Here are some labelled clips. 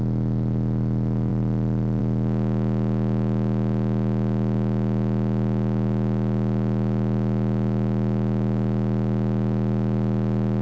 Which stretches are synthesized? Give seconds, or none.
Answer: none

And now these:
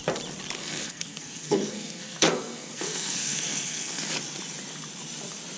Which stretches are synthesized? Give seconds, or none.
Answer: 0.6-4.0 (codec, SNAC)

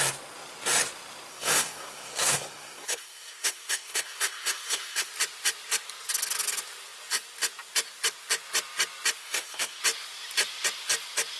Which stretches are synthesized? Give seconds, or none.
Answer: 1.3-5.1 (codec, SNAC); 9.2-9.8

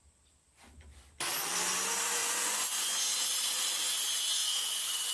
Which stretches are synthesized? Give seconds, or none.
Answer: 2.2-3.0 (vocoder, Vocos); 4.4-5.1

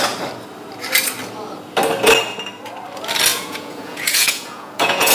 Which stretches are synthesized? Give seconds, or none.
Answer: 3.3-5.1 (vocoder, Vocos)

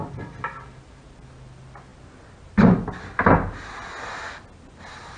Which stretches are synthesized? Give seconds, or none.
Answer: none